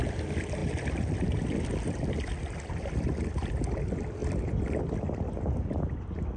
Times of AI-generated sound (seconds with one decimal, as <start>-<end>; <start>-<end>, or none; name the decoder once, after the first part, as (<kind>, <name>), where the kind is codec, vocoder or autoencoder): none